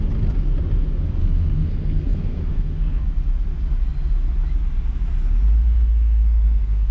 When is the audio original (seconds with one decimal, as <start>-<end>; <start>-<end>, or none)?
0.0-1.2; 3.0-5.6